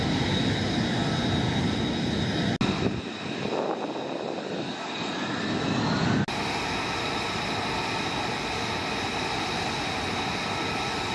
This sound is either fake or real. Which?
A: real